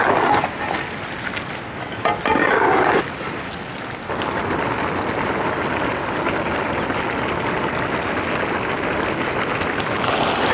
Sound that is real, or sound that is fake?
real